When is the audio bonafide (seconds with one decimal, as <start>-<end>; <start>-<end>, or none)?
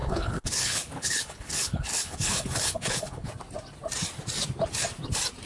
3.3-5.5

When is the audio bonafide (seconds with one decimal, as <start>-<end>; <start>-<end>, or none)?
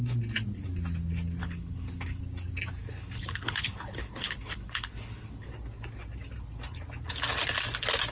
0.0-1.4; 2.2-2.8; 5.5-8.1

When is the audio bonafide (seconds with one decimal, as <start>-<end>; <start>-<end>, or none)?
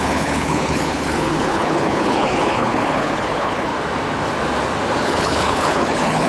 3.7-5.0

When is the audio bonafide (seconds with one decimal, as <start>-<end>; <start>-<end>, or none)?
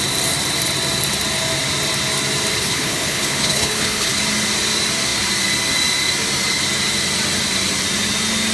0.0-2.6; 4.2-8.5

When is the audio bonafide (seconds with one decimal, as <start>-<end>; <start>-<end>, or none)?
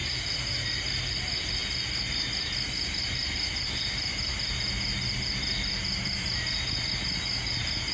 0.0-7.9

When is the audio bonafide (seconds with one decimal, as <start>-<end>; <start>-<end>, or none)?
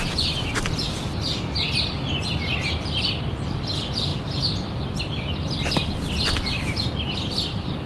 0.0-7.9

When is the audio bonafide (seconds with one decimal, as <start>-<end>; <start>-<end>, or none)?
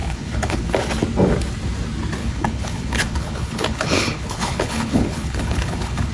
0.7-2.2